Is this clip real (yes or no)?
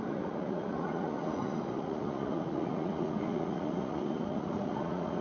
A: no